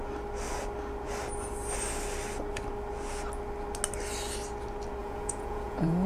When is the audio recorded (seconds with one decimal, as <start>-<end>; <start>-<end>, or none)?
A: 0.0-5.0